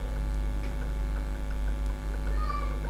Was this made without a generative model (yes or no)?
yes